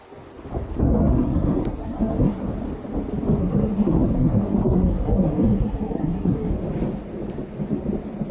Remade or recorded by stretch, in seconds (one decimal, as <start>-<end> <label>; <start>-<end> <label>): 0.0-0.8 recorded; 0.8-2.4 remade; 2.4-3.4 recorded; 3.4-6.5 remade; 6.5-8.3 recorded